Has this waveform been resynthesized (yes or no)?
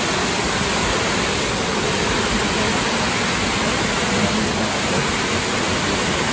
no